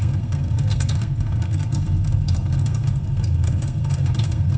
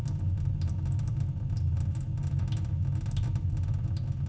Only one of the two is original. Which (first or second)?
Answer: second